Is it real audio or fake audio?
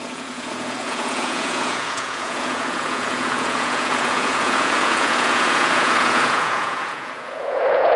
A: fake